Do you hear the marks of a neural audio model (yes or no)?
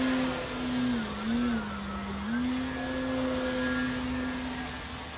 no